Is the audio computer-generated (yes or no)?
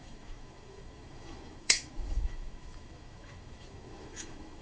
yes